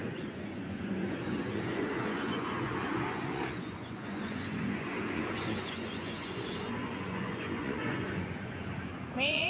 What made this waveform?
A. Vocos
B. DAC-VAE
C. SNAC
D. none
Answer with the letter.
A